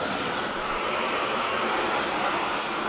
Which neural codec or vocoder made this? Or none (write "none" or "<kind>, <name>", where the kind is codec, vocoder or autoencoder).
vocoder, BigVGAN v2